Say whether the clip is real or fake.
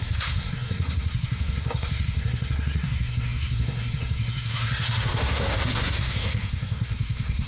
fake